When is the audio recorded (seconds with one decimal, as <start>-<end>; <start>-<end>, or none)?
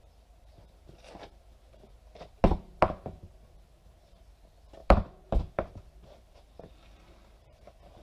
0.0-4.8; 6.3-8.0